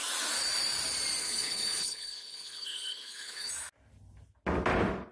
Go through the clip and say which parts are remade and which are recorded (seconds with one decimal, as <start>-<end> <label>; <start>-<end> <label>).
0.0-1.2 recorded; 1.2-3.5 remade; 3.5-5.1 recorded